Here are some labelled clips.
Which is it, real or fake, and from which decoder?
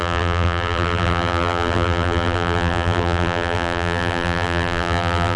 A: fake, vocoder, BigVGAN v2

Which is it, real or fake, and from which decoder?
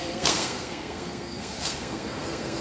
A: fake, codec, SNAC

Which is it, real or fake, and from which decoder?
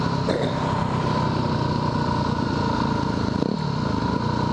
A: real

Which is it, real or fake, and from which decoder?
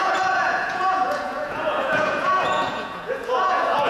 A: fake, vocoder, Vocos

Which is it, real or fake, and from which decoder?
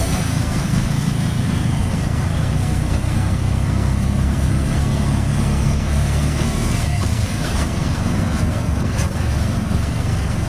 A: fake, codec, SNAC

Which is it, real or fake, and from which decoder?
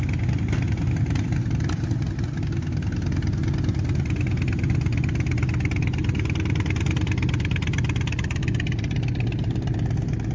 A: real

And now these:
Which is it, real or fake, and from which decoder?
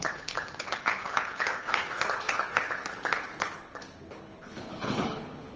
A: fake, codec, HILCodec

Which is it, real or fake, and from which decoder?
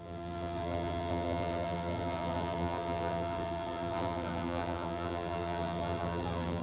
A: fake, vocoder, BigVGAN v2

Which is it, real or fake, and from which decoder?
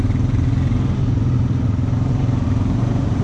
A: real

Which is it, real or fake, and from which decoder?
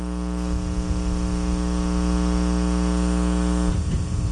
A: real